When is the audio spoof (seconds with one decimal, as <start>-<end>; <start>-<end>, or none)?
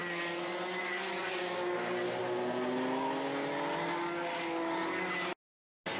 none